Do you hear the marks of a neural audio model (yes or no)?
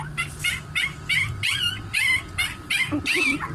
yes